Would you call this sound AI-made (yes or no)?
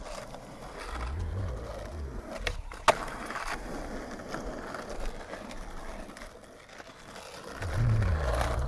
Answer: no